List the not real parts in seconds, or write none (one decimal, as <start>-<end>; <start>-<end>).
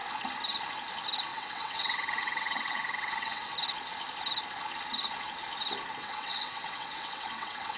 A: 1.3-3.5; 6.0-7.8